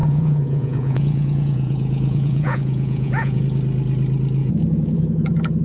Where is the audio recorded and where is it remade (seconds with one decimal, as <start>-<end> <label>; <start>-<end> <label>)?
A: 0.0-3.4 remade; 3.4-4.4 recorded; 4.4-5.6 remade